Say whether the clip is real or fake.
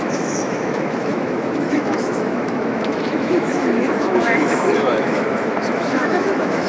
fake